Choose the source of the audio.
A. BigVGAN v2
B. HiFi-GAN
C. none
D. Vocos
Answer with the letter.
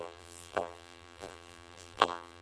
A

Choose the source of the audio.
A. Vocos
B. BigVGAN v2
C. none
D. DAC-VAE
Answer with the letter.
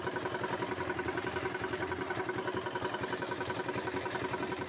C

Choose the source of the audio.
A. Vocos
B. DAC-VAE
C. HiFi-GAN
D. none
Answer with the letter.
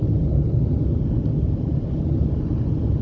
D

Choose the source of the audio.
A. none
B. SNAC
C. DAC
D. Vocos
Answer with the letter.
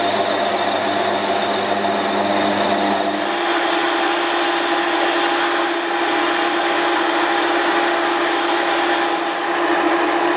A